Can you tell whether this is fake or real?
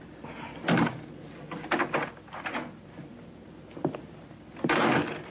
real